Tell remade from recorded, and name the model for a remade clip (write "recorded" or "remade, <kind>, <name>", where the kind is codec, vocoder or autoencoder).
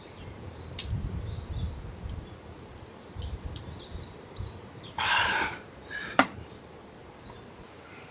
remade, vocoder, BigVGAN v2